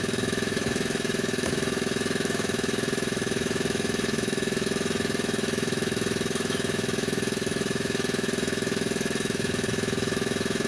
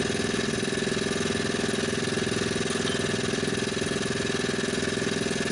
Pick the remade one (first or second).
first